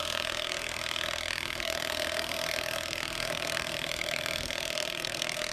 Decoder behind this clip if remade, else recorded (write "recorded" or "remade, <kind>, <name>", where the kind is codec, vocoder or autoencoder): remade, codec, SNAC